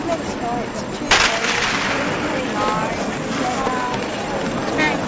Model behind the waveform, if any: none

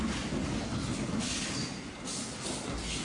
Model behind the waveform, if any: none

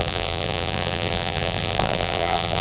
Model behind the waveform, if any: vocoder, BigVGAN v2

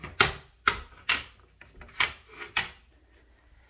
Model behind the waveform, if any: none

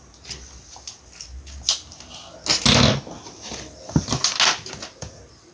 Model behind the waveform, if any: none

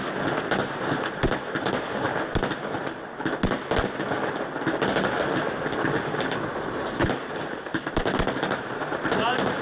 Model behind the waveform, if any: none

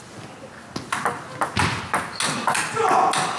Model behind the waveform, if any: none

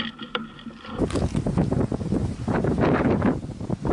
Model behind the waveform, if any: none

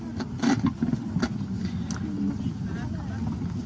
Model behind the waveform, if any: none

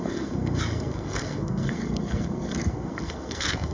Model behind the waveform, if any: codec, SNAC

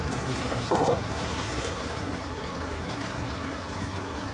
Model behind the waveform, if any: codec, SNAC